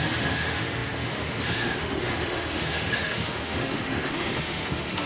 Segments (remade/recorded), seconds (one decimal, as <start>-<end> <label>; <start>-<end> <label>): 0.0-5.1 remade